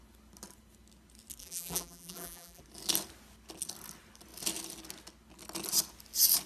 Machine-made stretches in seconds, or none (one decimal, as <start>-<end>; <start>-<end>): 1.4-2.6